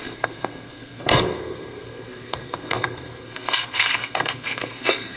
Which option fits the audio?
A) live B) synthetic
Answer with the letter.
B